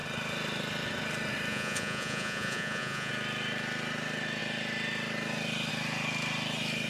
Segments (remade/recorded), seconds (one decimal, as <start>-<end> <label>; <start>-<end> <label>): 0.0-1.5 recorded; 1.5-3.1 remade; 3.1-6.9 recorded

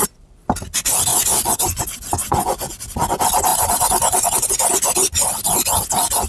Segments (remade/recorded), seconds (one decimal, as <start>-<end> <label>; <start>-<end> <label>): 0.0-1.1 recorded; 1.1-1.8 remade; 1.8-2.2 recorded; 2.2-2.7 remade; 2.7-3.5 recorded; 3.5-4.7 remade; 4.7-6.3 recorded

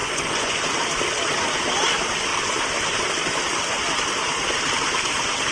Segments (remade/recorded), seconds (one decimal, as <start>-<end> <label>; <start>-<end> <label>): 0.0-0.6 remade; 0.6-5.5 recorded

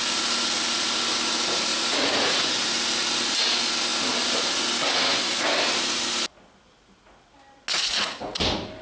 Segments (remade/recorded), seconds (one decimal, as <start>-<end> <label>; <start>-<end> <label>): 0.0-1.7 recorded; 1.7-2.5 remade; 2.5-7.7 recorded; 7.7-8.4 remade; 8.4-8.8 recorded

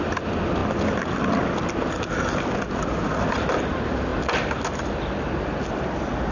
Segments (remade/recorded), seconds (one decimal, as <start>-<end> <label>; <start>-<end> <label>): 0.0-6.3 recorded

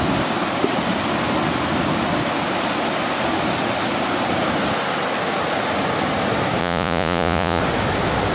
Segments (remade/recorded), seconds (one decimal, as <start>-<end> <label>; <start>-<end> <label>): 0.0-6.6 recorded; 6.6-7.6 remade; 7.6-8.3 recorded

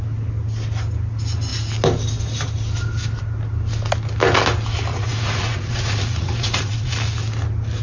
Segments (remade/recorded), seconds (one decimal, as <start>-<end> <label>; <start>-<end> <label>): 0.0-4.9 recorded; 4.9-6.9 remade; 6.9-7.8 recorded